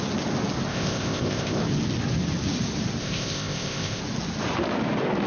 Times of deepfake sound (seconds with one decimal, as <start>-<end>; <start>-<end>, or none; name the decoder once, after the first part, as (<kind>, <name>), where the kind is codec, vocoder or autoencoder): 0.7-1.6 (codec, ZipCodec); 3.0-4.0